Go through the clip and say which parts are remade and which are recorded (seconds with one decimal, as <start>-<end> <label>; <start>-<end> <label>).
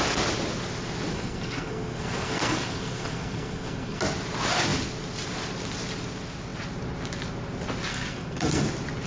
0.0-1.1 recorded; 1.1-4.0 remade; 4.0-7.9 recorded; 7.9-8.6 remade; 8.6-9.1 recorded